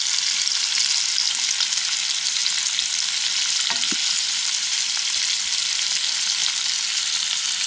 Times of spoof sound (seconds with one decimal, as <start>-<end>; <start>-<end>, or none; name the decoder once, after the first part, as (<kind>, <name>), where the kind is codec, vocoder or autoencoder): 4.0-4.8 (vocoder, BigVGAN v2)